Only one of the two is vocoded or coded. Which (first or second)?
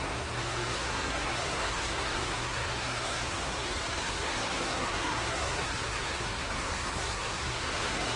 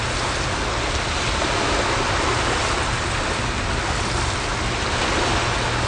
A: first